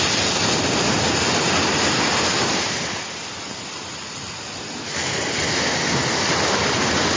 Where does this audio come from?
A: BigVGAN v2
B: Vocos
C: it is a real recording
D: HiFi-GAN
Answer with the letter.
C